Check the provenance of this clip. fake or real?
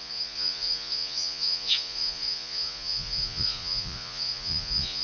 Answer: fake